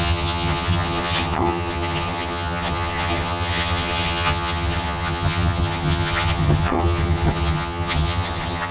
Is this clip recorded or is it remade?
remade